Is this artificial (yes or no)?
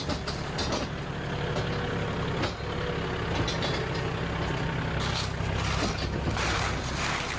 no